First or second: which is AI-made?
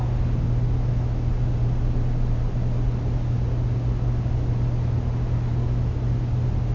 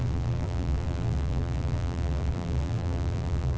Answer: second